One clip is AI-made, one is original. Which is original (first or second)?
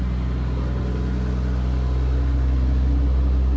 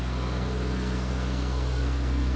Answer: first